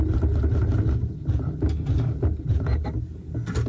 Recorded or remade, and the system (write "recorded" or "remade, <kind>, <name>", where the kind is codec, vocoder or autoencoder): recorded